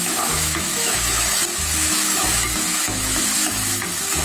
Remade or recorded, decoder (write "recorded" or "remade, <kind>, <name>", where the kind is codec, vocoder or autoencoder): remade, autoencoder, DAC-VAE